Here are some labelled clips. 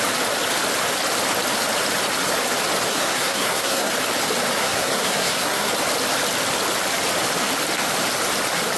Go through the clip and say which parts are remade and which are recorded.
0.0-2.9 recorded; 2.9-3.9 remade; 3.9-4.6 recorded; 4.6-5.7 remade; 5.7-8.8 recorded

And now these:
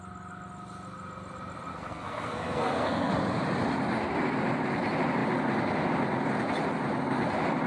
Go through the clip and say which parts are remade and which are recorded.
0.0-1.7 recorded; 1.7-3.1 remade; 3.1-7.7 recorded